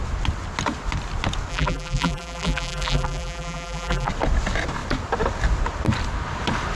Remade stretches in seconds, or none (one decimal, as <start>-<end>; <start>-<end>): 1.5-4.1